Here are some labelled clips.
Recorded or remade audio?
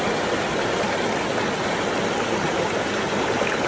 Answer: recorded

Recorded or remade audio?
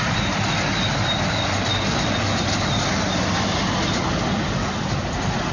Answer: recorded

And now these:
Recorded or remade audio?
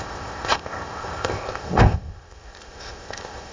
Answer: remade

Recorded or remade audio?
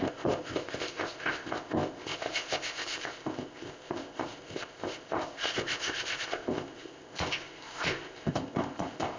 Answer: remade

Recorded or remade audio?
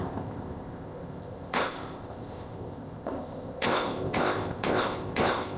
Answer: remade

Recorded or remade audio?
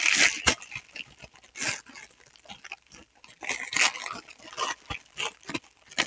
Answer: recorded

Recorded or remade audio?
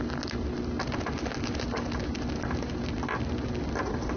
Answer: recorded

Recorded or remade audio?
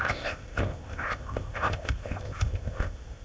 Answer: remade